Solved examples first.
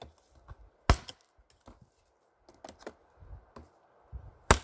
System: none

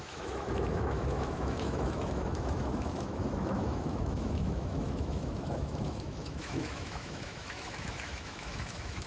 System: autoencoder, DAC-VAE